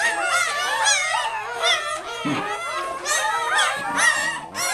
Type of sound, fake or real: real